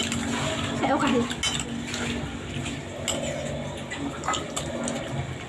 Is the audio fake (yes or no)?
no